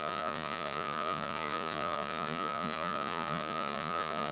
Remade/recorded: remade